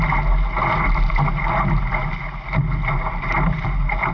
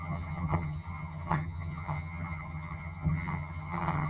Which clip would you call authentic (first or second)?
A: first